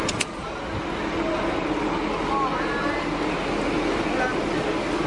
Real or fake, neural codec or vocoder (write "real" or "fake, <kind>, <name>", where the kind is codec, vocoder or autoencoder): real